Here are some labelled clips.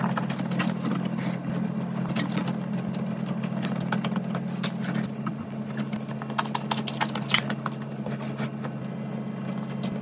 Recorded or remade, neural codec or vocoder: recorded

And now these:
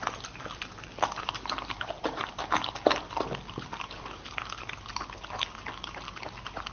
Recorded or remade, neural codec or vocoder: recorded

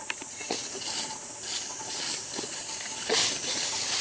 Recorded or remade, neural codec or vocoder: recorded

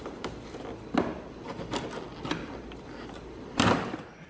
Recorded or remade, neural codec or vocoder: recorded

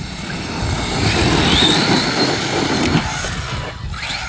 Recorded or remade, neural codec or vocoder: recorded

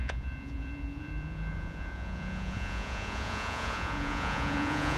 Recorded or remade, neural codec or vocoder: remade, vocoder, Vocos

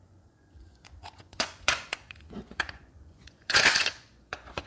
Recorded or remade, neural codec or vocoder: remade, vocoder, Vocos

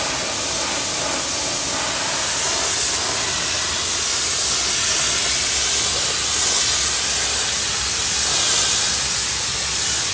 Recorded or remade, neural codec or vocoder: recorded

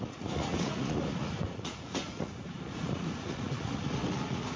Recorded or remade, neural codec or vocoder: remade, vocoder, Vocos